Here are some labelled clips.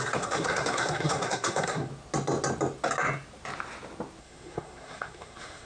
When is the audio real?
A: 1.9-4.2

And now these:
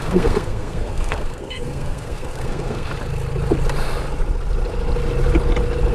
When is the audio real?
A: 2.9-5.9

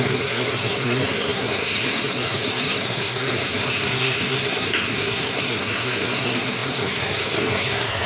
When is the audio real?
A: none

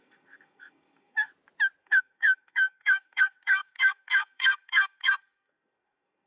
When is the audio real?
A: 1.3-1.8